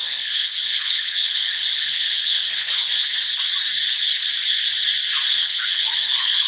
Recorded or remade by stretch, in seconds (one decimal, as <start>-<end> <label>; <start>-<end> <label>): 0.0-2.9 remade; 2.9-5.3 recorded; 5.3-6.5 remade